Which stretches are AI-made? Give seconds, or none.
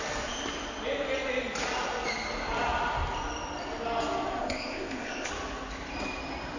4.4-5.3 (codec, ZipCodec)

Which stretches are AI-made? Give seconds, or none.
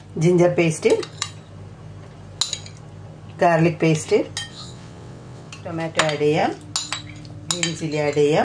4.5-5.5 (vocoder, WaveNeXt)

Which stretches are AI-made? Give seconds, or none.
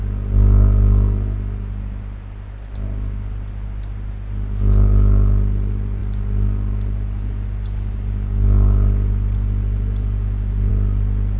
none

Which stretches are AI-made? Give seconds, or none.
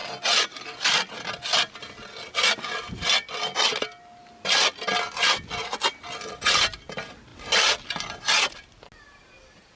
none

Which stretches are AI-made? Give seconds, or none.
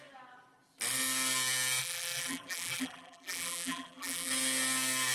1.8-4.3 (vocoder, BigVGAN v2)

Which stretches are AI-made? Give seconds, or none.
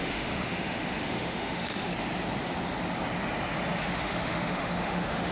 0.0-1.9 (autoencoder, DAC-VAE); 3.8-5.3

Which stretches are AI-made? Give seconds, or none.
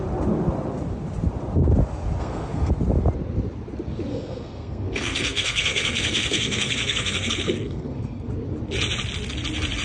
2.2-2.7 (codec, SNAC); 4.1-8.3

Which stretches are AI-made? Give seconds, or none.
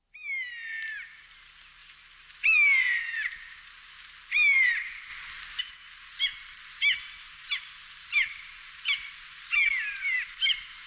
0.0-5.1 (vocoder, BigVGAN v2); 5.6-10.9